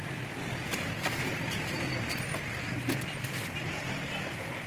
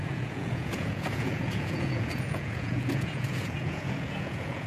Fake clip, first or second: second